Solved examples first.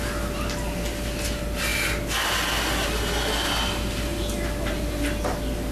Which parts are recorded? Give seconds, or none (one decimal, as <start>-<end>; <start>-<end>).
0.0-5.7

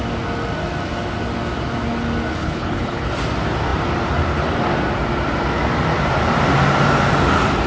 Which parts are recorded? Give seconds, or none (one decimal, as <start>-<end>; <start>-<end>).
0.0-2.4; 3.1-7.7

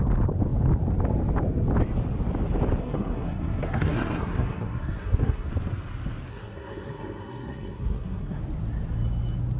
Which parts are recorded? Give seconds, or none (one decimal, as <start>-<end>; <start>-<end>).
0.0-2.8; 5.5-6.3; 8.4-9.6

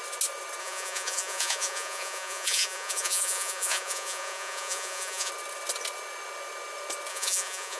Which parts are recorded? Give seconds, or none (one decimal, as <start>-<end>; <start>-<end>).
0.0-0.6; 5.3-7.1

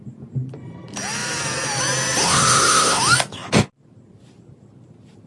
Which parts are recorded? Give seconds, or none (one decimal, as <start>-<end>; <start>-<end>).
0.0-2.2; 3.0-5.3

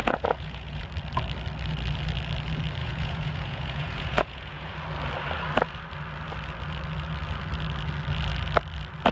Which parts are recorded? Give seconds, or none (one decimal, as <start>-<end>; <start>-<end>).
0.8-2.8; 4.7-9.1